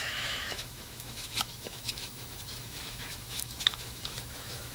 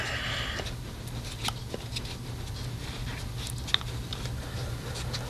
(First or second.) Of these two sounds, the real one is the second